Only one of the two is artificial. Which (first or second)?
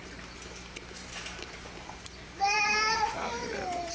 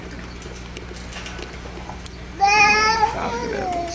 first